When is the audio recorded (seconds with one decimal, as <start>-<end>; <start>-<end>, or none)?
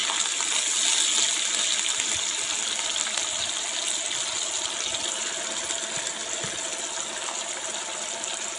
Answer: 0.0-8.6